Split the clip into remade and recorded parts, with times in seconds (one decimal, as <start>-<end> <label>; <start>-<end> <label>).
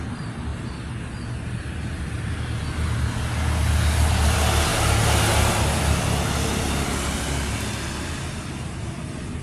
0.0-9.4 recorded